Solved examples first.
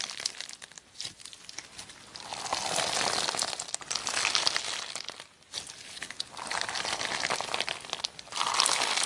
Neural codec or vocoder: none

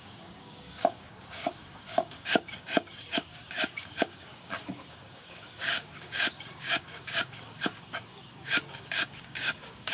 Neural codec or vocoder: codec, DAC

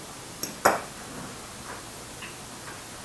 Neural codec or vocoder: vocoder, BigVGAN v2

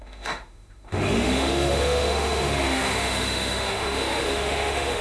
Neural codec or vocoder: autoencoder, DAC-VAE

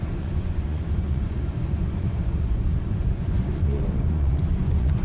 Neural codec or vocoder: vocoder, Vocos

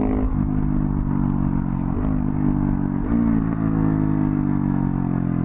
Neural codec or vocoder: none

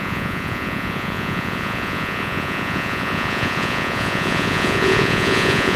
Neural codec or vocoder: vocoder, Vocos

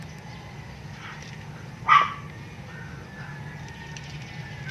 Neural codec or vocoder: none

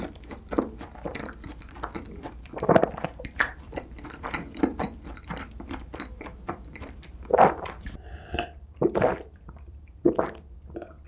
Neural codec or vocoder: vocoder, BigVGAN v2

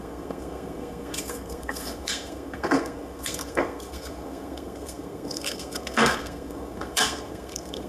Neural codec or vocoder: codec, SNAC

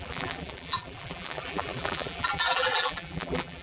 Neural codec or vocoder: vocoder, BigVGAN v2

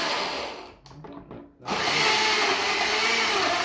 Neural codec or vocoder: none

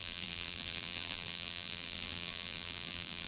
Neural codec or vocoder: vocoder, BigVGAN v2